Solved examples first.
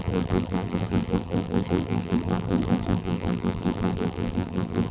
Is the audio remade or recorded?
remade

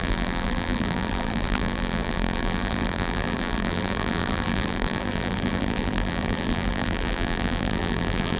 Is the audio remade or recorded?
remade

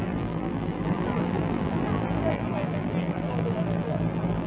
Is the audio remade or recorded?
remade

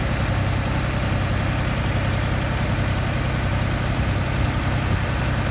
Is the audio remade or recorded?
recorded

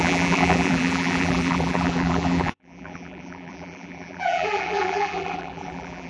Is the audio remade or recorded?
remade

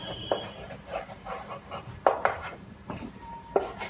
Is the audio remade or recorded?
remade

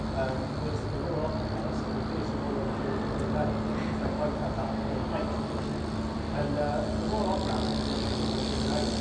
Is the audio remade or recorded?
recorded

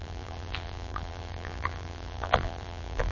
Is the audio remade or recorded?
remade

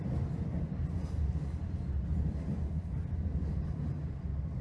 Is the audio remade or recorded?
recorded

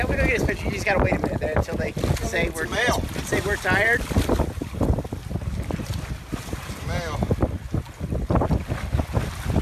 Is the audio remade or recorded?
recorded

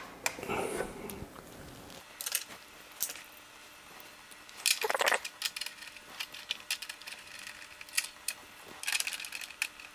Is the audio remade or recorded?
recorded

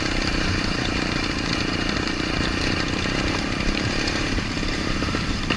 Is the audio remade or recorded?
remade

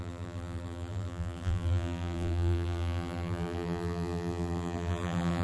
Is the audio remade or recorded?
remade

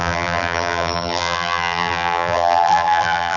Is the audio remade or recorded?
remade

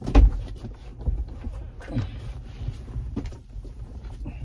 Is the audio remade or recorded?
remade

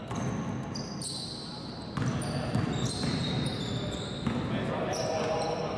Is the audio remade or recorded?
recorded